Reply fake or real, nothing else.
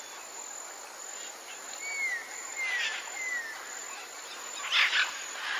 real